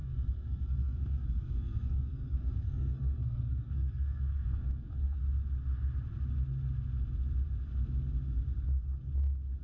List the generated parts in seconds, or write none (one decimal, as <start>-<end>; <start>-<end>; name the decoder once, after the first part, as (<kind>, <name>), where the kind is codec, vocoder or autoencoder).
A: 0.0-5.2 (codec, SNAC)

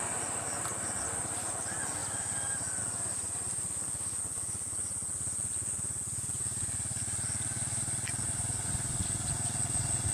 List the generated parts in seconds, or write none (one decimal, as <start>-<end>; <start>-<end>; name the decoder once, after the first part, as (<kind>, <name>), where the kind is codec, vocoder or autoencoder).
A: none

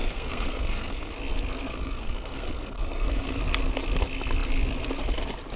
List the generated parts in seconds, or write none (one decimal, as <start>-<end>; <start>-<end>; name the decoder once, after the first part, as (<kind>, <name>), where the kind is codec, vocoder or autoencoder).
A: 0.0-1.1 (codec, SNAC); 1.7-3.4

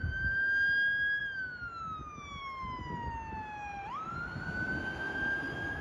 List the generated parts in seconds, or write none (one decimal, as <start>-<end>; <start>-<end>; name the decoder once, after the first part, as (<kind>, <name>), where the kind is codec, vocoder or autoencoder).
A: none

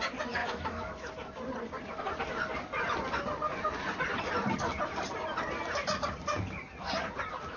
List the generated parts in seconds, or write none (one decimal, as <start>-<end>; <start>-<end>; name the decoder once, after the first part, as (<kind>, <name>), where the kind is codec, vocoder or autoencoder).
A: 0.4-1.1 (autoencoder, DAC-VAE)